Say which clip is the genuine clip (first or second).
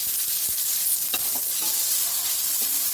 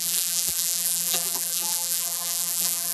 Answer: first